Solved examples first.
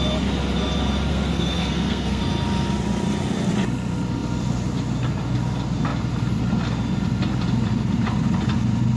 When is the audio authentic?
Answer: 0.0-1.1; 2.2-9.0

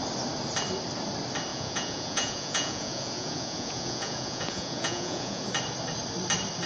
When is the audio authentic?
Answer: 0.0-1.5; 5.5-6.7